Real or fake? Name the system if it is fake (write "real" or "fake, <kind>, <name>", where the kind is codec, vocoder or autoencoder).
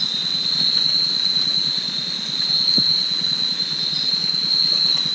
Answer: fake, vocoder, Vocos